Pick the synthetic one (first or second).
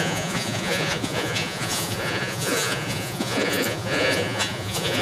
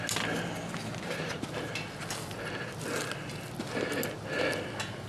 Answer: first